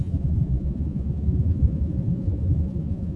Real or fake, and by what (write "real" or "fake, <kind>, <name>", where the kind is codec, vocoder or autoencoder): fake, vocoder, Vocos